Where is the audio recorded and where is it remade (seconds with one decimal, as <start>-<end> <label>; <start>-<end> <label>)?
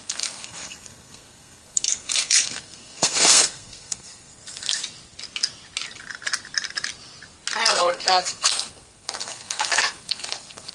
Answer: 0.0-4.8 remade; 4.8-7.7 recorded; 7.7-10.7 remade